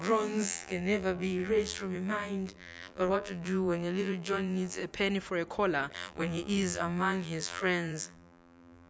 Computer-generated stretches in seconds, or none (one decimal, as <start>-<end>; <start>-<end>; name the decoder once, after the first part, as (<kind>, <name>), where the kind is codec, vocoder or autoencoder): 0.0-4.8 (vocoder, BigVGAN v2); 5.9-8.9